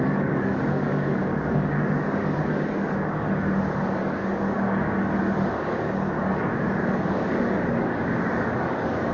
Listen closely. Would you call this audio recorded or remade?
remade